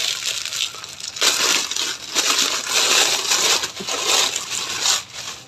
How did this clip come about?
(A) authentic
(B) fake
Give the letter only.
A